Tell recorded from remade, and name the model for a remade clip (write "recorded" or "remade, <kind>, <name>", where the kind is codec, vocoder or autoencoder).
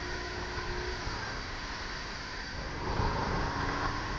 recorded